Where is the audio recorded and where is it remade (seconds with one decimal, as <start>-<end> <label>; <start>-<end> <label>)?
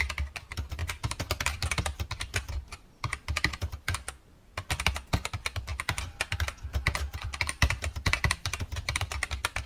0.0-0.8 recorded; 0.8-3.7 remade; 3.7-5.7 recorded; 5.7-9.7 remade